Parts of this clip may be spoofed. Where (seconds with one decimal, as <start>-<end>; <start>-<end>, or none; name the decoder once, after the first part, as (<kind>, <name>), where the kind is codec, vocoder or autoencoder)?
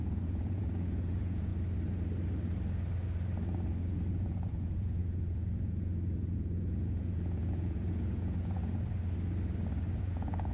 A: 0.0-1.5 (vocoder, Vocos); 4.1-8.6; 10.0-10.5